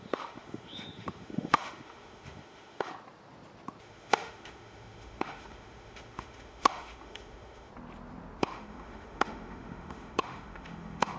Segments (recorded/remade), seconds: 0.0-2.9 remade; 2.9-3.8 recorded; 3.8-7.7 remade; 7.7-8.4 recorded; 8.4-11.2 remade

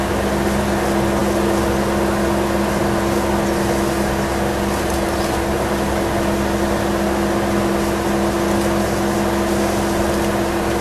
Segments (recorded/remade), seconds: 0.0-10.8 recorded

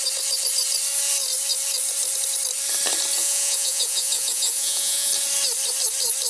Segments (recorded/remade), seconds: 0.0-3.2 recorded; 3.2-5.1 remade; 5.1-6.3 recorded